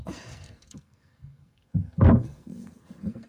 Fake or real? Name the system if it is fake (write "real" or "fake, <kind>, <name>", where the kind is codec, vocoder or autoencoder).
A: fake, codec, SNAC